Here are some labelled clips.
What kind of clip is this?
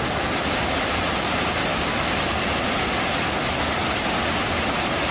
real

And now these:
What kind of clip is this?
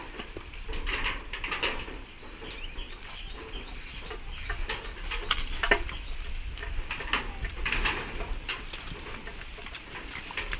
real